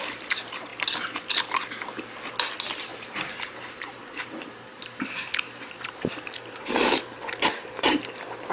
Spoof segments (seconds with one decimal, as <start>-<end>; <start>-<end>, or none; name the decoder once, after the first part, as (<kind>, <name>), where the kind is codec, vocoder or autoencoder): 2.9-8.0 (vocoder, BigVGAN v2)

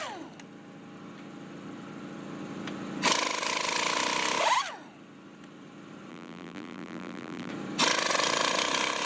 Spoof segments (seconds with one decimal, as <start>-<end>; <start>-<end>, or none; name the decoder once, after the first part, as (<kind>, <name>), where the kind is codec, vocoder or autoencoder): 6.1-7.5 (vocoder, BigVGAN v2)

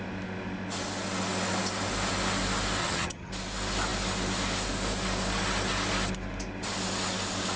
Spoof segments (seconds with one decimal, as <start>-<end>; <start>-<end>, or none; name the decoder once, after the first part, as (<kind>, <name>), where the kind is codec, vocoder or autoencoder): 2.8-3.3 (vocoder, HiFi-GAN)

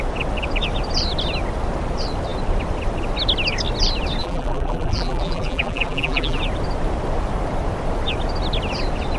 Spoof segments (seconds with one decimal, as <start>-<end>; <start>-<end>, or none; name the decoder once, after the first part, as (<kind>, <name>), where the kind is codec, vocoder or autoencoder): 4.2-6.4 (vocoder, BigVGAN v2)